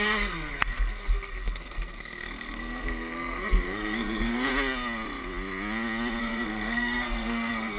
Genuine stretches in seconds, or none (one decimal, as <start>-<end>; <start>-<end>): 4.5-6.2